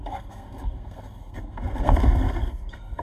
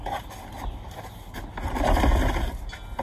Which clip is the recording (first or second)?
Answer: second